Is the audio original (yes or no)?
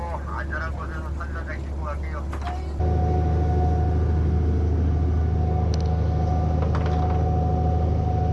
yes